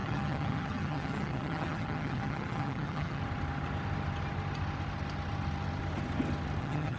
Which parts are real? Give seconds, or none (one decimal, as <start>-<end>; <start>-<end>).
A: 3.2-6.6